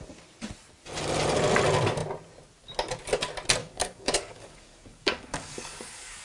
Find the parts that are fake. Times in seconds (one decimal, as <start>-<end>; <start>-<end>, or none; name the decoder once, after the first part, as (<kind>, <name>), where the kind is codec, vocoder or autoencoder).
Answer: 3.6-6.2 (codec, DAC)